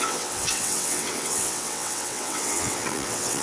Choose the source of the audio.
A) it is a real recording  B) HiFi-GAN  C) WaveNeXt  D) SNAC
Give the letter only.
C